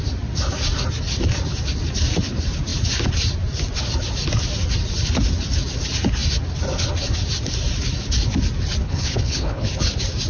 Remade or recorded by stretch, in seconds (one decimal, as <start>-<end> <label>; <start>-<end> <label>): 0.0-8.8 recorded; 8.8-9.7 remade; 9.7-10.3 recorded